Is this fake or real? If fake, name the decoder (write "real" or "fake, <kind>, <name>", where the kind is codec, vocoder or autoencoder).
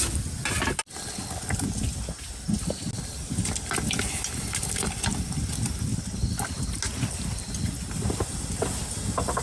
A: real